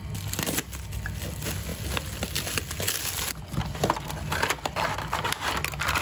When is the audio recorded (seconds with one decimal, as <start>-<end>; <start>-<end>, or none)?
0.0-6.0